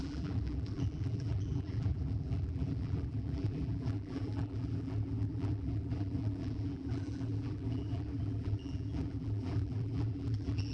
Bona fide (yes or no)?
no